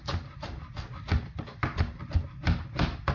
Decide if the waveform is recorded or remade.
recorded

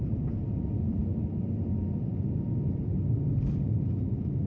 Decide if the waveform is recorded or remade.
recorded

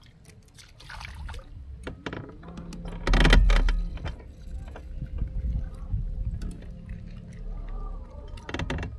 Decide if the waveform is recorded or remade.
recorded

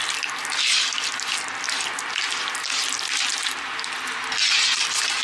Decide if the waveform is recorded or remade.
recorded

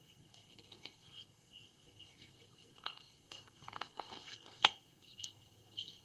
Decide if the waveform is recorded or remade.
remade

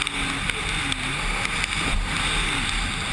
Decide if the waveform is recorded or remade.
recorded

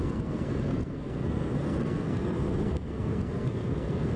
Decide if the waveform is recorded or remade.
remade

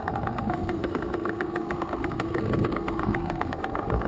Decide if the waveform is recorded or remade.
remade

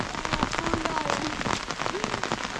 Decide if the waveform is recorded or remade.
recorded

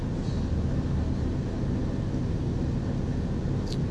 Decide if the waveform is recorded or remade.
recorded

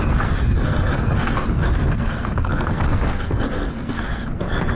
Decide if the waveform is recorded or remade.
remade